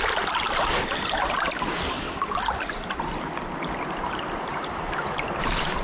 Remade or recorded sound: recorded